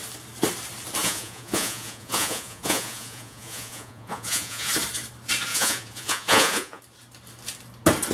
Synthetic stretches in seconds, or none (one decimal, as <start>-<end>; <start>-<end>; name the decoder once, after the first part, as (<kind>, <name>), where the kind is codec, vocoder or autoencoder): 1.0-4.7 (vocoder, Vocos); 5.5-6.8